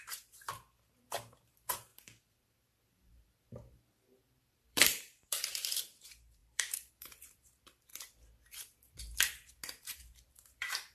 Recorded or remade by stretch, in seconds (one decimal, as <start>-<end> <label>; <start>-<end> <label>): 0.0-7.9 remade; 7.9-9.8 recorded; 9.8-10.9 remade